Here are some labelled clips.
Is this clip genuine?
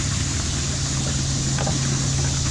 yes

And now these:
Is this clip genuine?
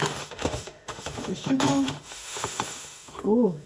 no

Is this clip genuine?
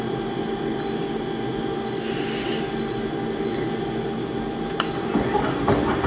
yes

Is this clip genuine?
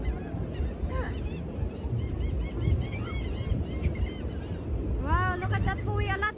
yes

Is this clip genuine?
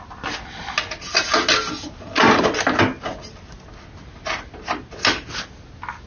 yes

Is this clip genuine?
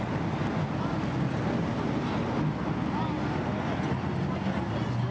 yes